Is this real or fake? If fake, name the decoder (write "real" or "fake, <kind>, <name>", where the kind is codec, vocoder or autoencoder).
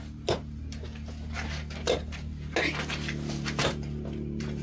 real